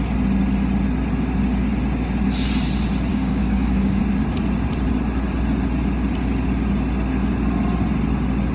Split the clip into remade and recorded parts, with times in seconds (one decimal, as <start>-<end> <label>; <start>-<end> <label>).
0.0-3.1 recorded; 3.1-4.0 remade; 4.0-8.5 recorded